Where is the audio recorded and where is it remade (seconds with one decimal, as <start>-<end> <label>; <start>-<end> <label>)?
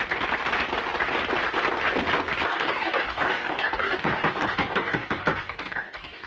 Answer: 0.0-2.5 recorded; 2.5-6.3 remade